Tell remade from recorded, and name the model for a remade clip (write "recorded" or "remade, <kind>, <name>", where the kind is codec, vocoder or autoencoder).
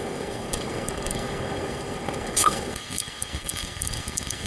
remade, codec, SNAC